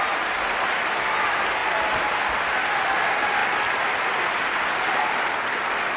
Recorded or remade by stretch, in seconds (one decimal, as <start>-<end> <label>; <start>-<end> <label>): 0.0-6.0 recorded